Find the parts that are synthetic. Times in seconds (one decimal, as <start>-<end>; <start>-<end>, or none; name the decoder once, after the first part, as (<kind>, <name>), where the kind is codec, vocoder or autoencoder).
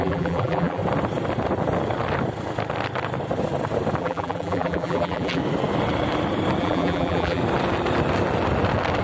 0.0-0.8 (vocoder, BigVGAN v2); 4.0-5.4; 6.6-7.4